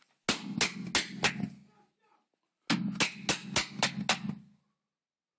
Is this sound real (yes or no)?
yes